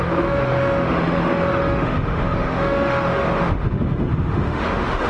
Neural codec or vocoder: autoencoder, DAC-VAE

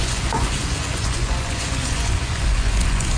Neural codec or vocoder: vocoder, Vocos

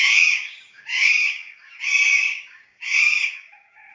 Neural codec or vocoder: codec, DAC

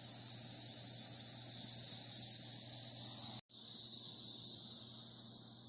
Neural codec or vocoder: none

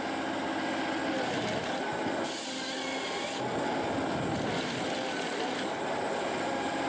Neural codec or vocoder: none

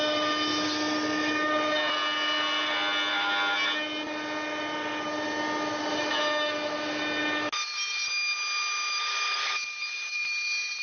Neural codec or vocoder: none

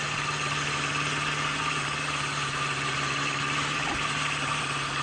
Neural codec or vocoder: none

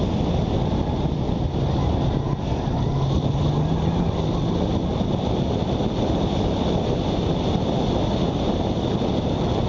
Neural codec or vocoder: none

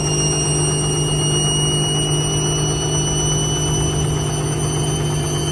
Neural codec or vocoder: none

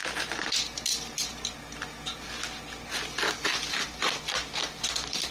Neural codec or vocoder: none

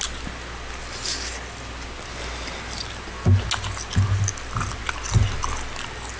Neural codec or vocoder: none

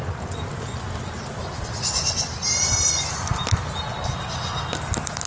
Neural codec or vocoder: none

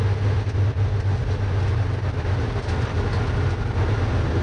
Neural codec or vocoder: none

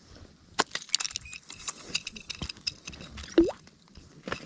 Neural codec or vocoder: none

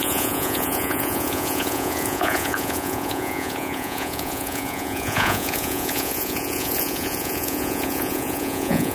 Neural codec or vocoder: vocoder, Vocos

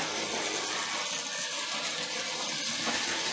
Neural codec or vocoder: none